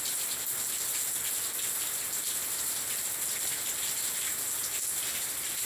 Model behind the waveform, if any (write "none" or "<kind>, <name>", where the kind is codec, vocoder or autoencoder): none